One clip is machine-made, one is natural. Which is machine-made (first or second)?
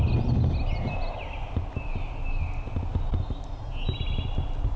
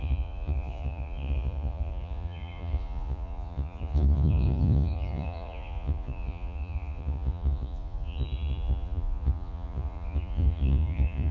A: second